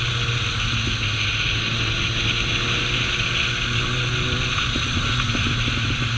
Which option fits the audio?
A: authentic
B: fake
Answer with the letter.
A